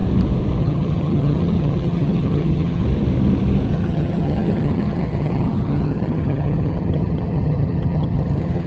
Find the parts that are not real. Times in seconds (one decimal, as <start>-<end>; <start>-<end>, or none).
0.6-2.8; 3.7-8.7